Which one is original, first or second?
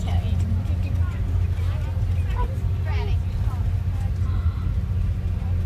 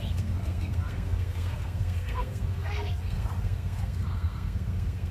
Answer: first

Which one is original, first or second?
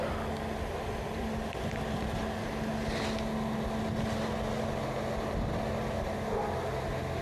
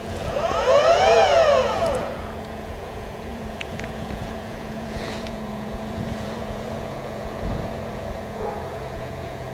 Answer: first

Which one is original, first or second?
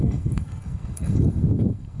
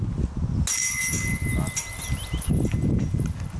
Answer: second